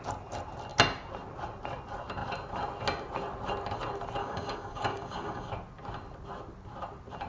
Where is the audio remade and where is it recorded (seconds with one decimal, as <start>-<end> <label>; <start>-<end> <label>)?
0.0-4.2 recorded; 4.2-5.5 remade; 5.5-7.3 recorded